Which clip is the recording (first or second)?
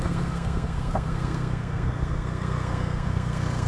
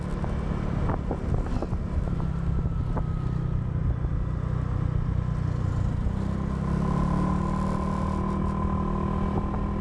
second